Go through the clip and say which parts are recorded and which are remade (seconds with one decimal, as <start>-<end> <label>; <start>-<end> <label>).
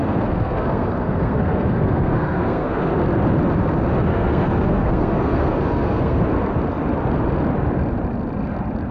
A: 0.0-2.9 remade; 2.9-4.1 recorded; 4.1-6.2 remade; 6.2-8.9 recorded